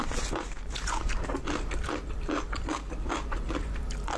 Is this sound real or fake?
fake